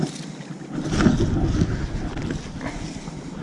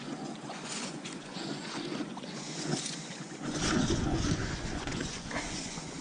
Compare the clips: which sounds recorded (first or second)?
first